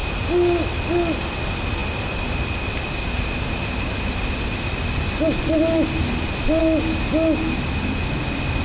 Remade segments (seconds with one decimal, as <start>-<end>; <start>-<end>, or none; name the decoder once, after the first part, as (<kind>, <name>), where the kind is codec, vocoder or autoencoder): none